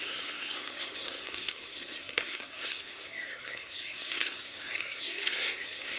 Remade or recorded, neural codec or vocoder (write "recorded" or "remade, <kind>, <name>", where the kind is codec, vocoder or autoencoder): remade, codec, SNAC